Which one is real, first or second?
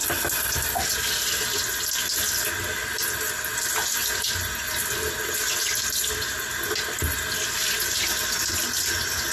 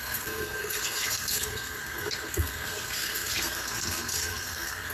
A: first